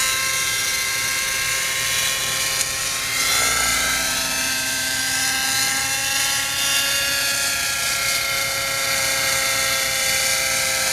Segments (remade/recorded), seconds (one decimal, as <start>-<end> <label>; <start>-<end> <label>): 0.0-3.7 recorded; 3.7-5.0 remade; 5.0-10.9 recorded